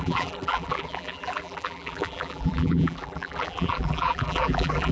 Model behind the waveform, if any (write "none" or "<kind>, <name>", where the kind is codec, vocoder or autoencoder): vocoder, BigVGAN v2